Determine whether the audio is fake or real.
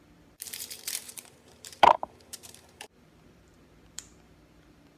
fake